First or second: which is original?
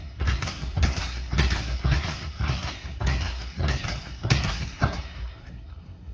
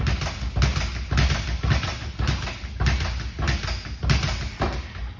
second